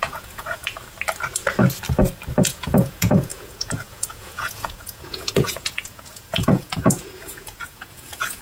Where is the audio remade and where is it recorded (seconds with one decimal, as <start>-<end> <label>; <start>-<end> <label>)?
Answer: 0.0-0.6 remade; 0.6-2.4 recorded; 2.4-8.4 remade